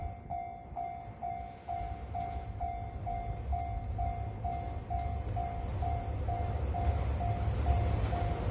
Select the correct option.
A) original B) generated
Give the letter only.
A